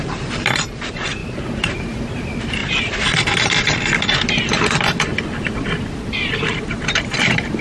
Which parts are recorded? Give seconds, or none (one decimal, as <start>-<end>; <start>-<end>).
0.0-1.2; 1.7-2.6